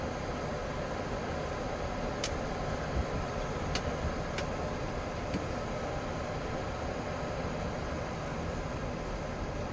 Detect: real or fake real